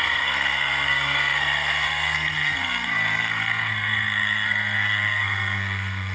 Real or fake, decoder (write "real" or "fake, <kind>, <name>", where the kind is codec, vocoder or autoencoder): fake, codec, SNAC